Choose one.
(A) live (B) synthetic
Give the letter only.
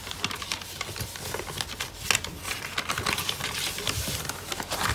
A